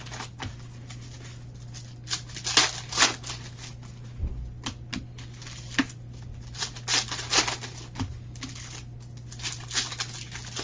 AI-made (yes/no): no